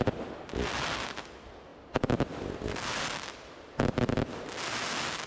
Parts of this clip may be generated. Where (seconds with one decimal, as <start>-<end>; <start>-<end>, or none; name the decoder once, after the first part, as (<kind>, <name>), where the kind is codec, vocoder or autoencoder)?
none